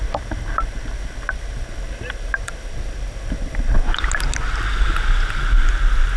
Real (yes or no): yes